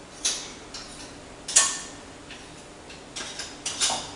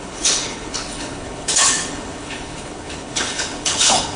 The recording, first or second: first